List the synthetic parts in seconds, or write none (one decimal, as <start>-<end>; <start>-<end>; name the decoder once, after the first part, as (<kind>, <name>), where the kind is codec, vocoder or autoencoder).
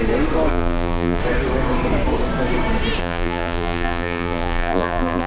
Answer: 0.5-1.2 (vocoder, BigVGAN v2); 3.0-5.3